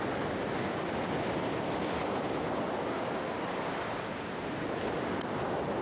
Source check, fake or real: real